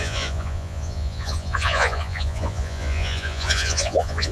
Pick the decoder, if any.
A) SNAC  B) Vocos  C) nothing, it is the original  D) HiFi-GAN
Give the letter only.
B